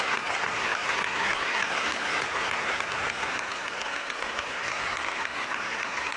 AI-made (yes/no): yes